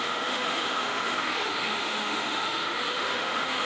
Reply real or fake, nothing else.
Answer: fake